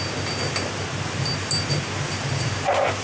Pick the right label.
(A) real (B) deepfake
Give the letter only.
A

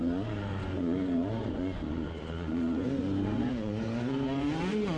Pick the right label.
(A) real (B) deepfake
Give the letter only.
B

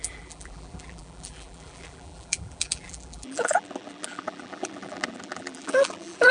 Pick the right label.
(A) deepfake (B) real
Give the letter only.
A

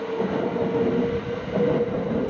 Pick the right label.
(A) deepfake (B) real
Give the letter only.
B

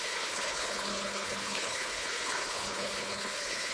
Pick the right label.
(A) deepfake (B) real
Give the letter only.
A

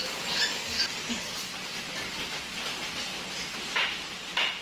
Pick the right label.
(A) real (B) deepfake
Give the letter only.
A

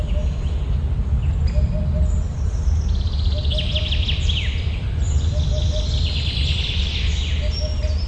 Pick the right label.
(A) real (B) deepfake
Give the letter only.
A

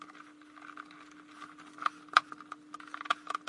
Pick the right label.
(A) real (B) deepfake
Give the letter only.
A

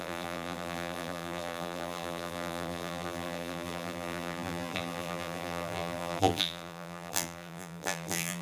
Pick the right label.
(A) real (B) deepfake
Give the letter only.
B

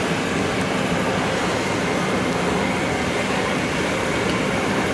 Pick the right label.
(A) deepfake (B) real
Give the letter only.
B